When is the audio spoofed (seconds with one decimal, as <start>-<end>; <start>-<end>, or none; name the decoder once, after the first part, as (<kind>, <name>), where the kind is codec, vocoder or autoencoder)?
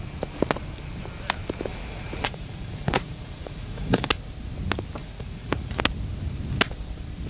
1.7-4.1 (vocoder, Vocos); 5.0-5.8